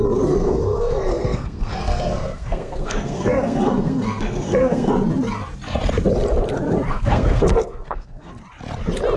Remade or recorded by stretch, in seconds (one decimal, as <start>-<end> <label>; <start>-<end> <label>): 0.0-0.4 recorded; 0.4-4.9 remade; 4.9-6.9 recorded; 6.9-8.3 remade; 8.3-9.2 recorded